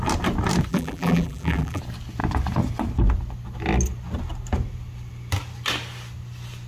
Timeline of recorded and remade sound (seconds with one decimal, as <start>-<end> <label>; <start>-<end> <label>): 0.0-0.7 recorded; 0.7-1.8 remade; 1.8-6.7 recorded